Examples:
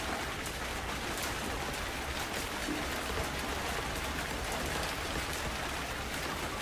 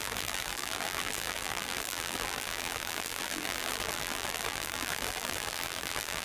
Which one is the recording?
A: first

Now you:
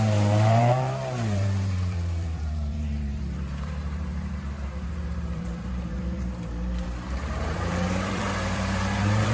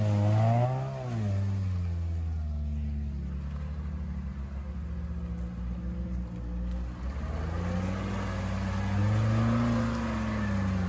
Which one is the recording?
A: second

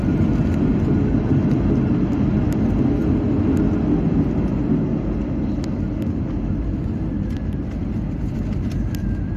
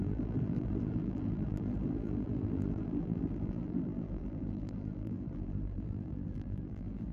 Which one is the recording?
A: first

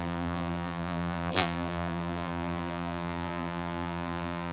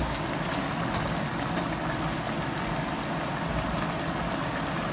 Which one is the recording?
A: second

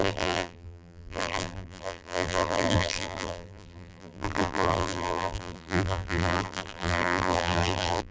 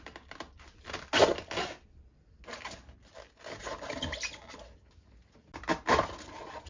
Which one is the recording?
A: second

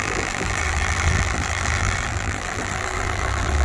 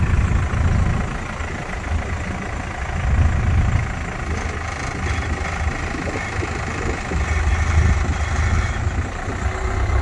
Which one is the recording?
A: second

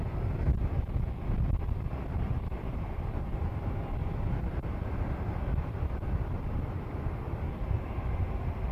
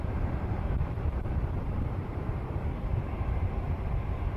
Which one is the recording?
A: first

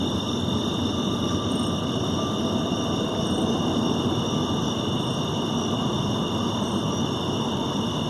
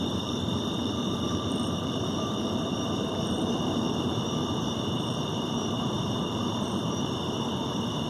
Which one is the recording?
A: first